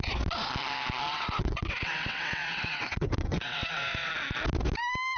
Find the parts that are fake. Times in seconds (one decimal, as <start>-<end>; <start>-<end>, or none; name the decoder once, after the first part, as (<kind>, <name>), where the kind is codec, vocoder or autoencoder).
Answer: 1.1-4.1 (vocoder, WaveNeXt)

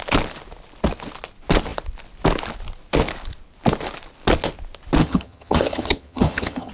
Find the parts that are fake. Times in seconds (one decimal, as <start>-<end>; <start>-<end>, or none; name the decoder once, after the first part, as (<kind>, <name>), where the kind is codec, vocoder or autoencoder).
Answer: 5.0-6.7 (vocoder, HiFi-GAN)